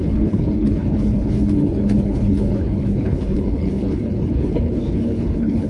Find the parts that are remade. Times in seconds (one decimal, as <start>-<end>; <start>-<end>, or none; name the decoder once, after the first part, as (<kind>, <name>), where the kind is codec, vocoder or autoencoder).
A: 0.0-5.7 (codec, HILCodec)